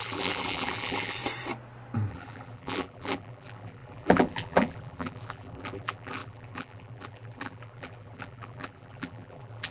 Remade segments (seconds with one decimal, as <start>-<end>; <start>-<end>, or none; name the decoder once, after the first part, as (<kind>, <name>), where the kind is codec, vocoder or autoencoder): 0.0-1.2 (vocoder, BigVGAN v2); 2.1-9.7